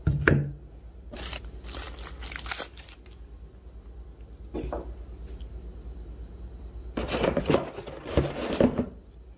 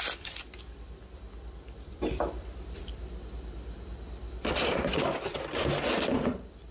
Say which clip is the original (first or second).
first